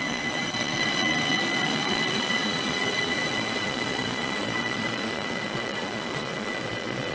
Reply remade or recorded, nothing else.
remade